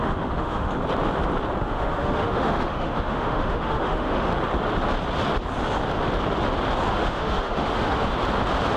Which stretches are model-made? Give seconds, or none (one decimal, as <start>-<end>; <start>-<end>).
0.0-0.7; 1.6-4.3; 6.9-8.1